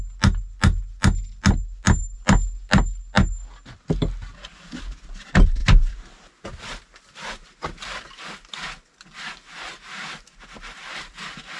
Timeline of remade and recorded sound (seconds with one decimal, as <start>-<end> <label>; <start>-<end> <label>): 0.0-11.6 recorded